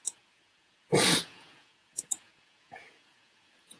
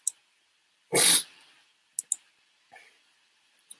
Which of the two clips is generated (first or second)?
first